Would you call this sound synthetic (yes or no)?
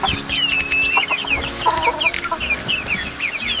no